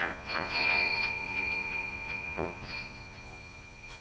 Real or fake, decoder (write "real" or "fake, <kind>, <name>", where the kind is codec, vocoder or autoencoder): fake, vocoder, Vocos